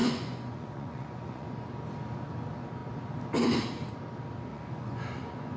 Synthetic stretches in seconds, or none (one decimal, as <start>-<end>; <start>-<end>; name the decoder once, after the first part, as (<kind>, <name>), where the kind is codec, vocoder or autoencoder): 0.0-1.7 (vocoder, Vocos); 4.5-5.6